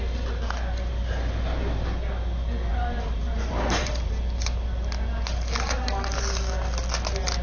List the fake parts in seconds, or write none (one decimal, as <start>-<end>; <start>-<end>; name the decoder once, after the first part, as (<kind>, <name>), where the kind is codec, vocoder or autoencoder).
2.7-4.1 (vocoder, BigVGAN v2)